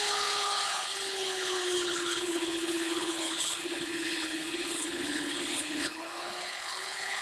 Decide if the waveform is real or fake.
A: fake